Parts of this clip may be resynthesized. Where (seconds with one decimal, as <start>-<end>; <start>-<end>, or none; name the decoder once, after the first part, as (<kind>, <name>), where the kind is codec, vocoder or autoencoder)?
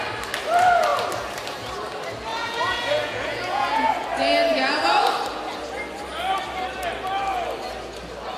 2.3-3.9 (vocoder, Vocos)